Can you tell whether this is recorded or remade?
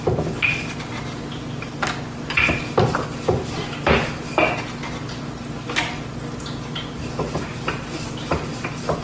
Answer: recorded